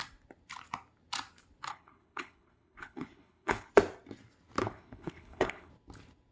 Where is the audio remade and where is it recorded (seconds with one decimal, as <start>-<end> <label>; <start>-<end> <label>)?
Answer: 0.0-1.7 recorded; 1.7-3.7 remade; 3.7-4.6 recorded; 4.6-5.7 remade; 5.7-6.3 recorded